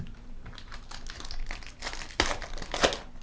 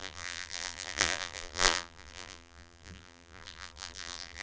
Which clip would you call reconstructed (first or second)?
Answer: second